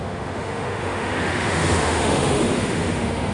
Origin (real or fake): fake